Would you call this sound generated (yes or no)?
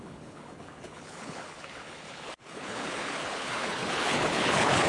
yes